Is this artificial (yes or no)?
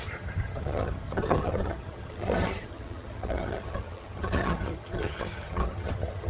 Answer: yes